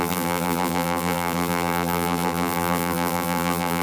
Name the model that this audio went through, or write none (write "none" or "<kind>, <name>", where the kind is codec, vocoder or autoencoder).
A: vocoder, BigVGAN v2